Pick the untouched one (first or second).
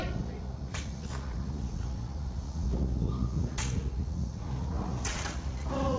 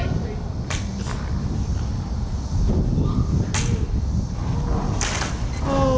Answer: second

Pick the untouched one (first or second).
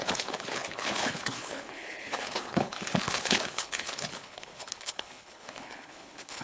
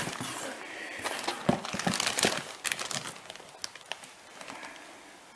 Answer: second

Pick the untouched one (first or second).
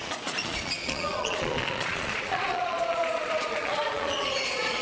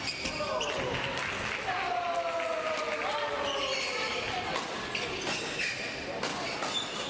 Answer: second